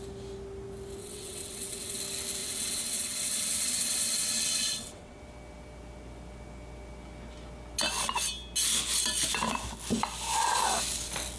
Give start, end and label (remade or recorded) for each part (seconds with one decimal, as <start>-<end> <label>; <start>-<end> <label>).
0.0-1.0 recorded; 1.0-2.0 remade; 2.0-2.4 recorded; 2.4-5.2 remade; 5.2-11.4 recorded